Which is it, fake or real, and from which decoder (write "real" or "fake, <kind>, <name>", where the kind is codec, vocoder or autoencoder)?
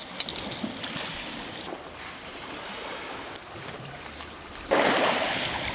real